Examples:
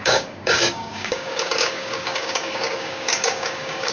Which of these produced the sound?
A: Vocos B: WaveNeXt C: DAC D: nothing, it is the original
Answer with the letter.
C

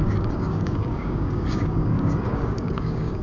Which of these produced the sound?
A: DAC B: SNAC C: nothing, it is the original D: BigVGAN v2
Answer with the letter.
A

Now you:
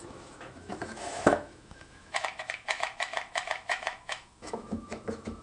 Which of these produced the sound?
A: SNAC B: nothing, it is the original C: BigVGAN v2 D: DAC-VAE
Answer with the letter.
D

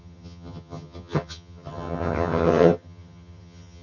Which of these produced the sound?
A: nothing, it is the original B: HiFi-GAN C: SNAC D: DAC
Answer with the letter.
B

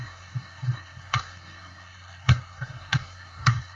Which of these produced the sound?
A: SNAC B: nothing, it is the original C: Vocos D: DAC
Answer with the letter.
A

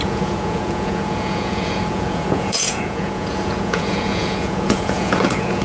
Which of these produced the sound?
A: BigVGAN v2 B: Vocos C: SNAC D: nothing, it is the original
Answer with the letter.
B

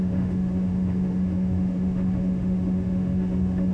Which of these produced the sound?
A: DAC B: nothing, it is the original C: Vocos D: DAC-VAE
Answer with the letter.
D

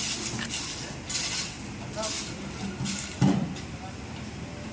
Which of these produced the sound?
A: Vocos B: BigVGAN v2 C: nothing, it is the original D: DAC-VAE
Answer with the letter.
C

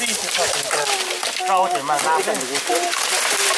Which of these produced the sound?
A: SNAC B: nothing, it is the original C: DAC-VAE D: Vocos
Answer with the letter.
B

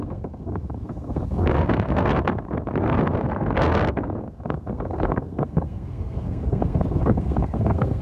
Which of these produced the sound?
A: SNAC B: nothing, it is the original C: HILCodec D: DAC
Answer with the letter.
A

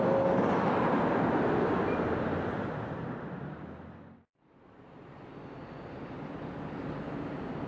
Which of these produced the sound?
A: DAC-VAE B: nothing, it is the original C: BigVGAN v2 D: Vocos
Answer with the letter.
B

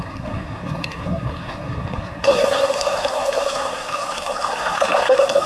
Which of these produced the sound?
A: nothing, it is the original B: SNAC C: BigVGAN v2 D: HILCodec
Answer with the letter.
B